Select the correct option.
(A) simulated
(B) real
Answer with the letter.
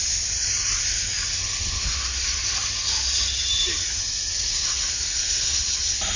B